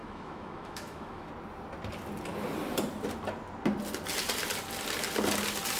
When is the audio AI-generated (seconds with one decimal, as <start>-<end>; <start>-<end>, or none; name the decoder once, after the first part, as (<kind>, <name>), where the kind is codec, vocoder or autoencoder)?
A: 0.0-1.3 (autoencoder, DAC-VAE)